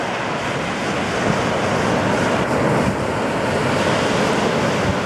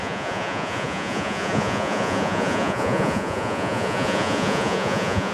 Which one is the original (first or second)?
first